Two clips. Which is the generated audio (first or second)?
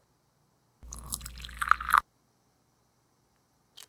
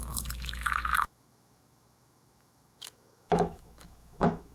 second